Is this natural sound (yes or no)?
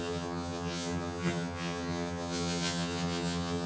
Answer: no